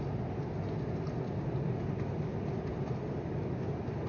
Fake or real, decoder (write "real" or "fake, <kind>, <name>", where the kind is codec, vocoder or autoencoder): real